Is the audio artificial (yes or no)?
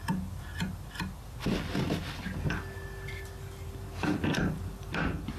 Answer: yes